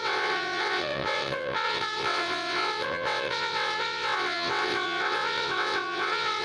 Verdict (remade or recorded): remade